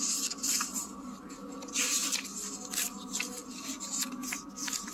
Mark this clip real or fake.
real